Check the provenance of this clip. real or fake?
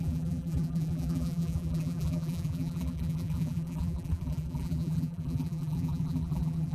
fake